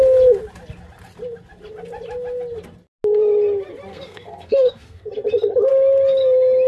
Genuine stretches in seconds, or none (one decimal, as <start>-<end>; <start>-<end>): 0.0-3.9; 5.1-6.7